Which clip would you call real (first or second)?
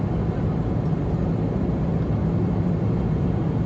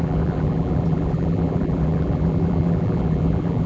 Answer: first